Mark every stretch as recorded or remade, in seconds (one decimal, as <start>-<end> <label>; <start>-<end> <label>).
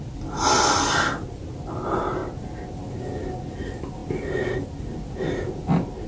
0.0-6.1 recorded